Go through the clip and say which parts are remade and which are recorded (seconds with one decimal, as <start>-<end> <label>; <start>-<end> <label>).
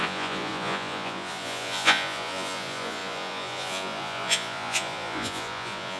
0.0-6.0 remade